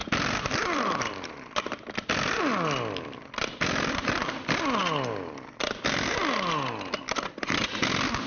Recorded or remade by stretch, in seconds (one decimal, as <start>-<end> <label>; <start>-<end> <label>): 0.0-2.4 remade; 2.4-8.3 recorded